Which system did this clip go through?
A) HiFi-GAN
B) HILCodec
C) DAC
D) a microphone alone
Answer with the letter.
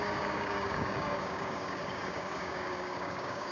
C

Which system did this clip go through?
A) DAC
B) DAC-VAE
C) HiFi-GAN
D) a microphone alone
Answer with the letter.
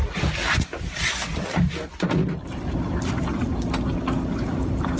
D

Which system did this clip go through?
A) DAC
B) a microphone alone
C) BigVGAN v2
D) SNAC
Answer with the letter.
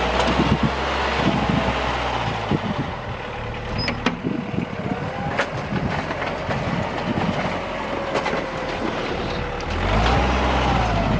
B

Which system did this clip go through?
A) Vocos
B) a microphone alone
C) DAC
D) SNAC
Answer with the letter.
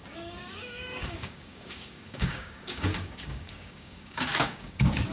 C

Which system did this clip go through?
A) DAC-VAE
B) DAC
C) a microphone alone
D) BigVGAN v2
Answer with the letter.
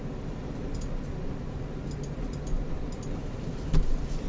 C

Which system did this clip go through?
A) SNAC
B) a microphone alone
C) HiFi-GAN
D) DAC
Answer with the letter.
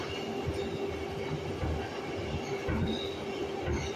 B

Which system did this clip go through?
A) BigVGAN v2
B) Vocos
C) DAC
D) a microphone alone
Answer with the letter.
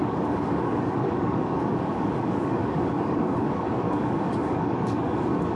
C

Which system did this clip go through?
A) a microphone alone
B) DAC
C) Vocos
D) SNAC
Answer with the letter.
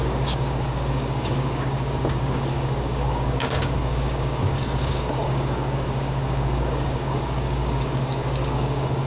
B